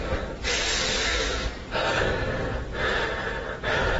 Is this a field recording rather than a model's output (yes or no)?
yes